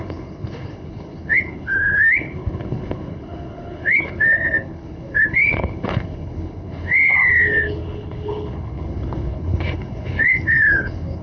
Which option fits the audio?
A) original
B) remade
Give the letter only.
B